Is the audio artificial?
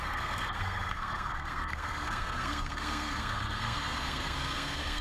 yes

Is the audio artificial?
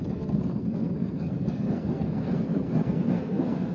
yes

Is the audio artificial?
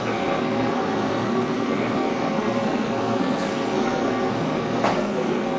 yes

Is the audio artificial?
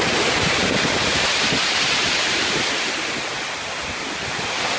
no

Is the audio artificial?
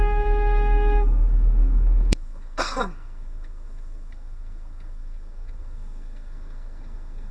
yes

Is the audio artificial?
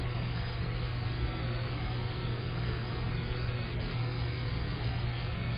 yes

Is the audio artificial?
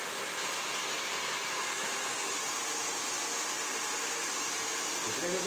no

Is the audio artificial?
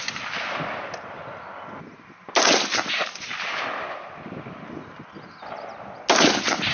no